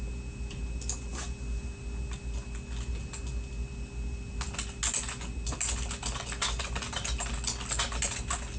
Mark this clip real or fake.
real